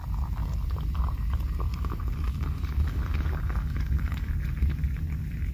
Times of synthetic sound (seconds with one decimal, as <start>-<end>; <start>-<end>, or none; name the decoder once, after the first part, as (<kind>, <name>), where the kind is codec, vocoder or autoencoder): 1.7-4.3 (codec, DAC)